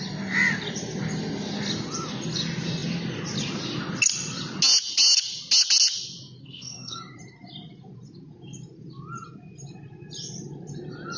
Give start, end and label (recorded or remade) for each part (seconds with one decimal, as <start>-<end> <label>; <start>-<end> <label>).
0.0-6.4 recorded; 6.4-7.0 remade; 7.0-11.2 recorded